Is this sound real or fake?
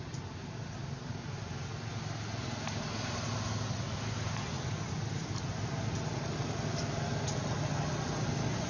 real